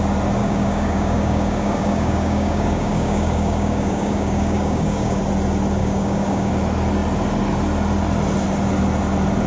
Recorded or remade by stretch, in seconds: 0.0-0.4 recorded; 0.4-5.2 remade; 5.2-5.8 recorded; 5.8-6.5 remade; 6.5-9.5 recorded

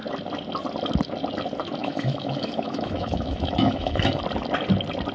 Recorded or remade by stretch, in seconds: 0.0-1.8 recorded; 1.8-4.2 remade; 4.2-5.1 recorded